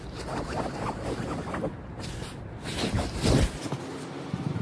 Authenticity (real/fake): real